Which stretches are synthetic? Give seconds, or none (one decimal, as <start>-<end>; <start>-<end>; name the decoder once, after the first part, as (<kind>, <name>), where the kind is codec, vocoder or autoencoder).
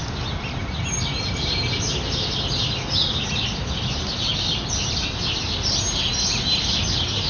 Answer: none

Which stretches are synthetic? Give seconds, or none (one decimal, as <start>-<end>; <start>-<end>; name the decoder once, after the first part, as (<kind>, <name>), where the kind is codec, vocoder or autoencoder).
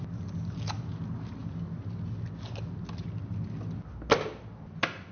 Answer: none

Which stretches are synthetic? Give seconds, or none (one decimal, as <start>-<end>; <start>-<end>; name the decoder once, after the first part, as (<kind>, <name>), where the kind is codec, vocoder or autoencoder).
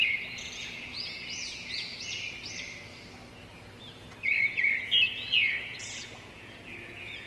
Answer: 0.0-1.9 (vocoder, Vocos); 3.8-7.3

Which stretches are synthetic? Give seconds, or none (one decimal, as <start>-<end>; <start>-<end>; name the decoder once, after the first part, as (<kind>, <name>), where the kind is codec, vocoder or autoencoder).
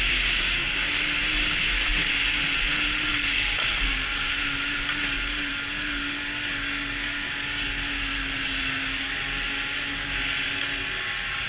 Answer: none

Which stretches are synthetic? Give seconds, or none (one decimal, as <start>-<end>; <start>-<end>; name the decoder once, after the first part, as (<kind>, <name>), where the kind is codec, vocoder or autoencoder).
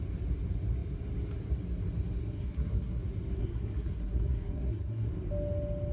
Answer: 2.2-3.0 (codec, SNAC); 3.4-5.1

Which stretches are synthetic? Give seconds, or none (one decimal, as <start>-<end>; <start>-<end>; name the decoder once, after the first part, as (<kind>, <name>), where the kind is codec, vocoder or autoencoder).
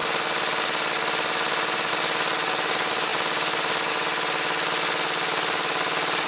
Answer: none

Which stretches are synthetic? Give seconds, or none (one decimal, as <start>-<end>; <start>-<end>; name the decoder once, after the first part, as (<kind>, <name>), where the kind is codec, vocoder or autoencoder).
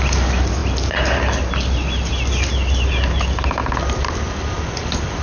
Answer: none